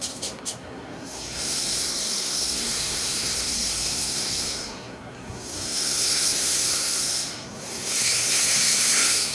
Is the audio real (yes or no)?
no